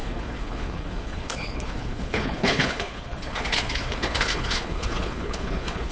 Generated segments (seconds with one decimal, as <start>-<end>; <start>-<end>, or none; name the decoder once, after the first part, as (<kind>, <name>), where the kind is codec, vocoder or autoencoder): 0.0-5.9 (codec, HILCodec)